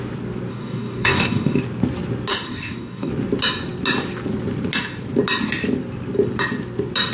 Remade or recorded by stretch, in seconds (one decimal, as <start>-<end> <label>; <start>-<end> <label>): 0.0-0.5 recorded; 0.5-1.6 remade; 1.6-2.3 recorded; 2.3-3.1 remade; 3.1-7.1 recorded